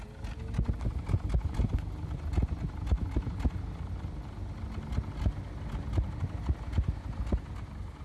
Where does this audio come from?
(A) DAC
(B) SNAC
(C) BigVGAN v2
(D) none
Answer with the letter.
D